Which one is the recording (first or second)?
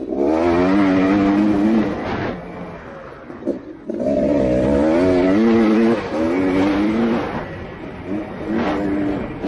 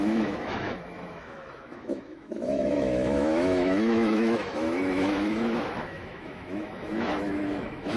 first